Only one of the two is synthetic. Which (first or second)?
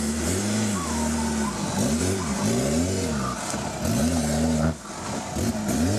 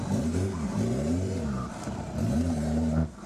second